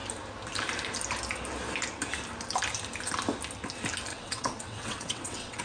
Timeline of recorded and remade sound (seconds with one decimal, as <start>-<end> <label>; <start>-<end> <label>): 0.0-4.1 recorded; 4.1-5.6 remade